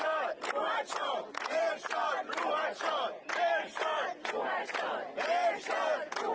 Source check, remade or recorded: remade